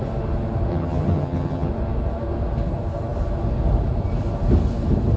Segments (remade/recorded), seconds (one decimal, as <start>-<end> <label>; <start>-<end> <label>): 0.0-0.7 recorded; 0.7-1.7 remade; 1.7-5.2 recorded